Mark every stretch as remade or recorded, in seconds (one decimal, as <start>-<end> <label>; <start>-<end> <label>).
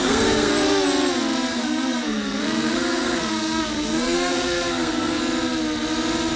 0.0-0.5 remade; 0.5-1.5 recorded; 1.5-5.2 remade; 5.2-6.4 recorded